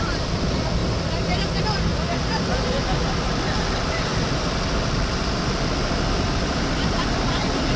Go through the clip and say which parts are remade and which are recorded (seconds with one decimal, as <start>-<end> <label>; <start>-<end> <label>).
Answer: 0.0-0.8 remade; 0.8-1.6 recorded; 1.6-2.5 remade; 2.5-3.2 recorded; 3.2-7.8 remade